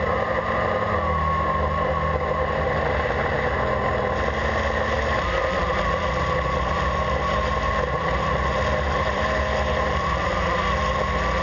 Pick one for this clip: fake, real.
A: real